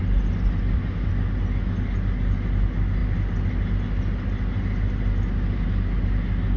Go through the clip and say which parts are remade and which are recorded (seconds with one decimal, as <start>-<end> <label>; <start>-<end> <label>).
0.0-6.6 recorded